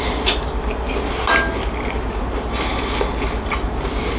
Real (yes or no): yes